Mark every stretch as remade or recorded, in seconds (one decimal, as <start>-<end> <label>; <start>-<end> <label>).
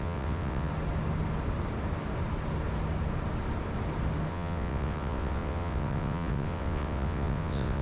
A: 0.0-0.7 remade; 0.7-4.3 recorded; 4.3-7.8 remade